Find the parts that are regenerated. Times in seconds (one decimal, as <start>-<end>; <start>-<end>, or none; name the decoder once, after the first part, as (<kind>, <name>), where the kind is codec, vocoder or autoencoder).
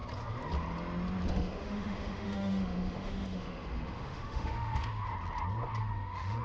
1.3-5.1 (autoencoder, DAC-VAE); 5.8-6.4